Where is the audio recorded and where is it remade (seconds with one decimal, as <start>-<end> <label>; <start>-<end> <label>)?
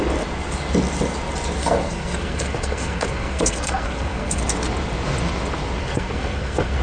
0.0-1.6 recorded; 1.6-4.4 remade; 4.4-5.8 recorded; 5.8-6.8 remade